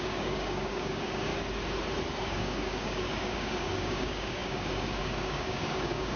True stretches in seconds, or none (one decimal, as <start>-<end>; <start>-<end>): 1.3-2.2